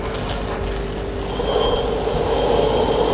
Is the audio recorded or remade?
recorded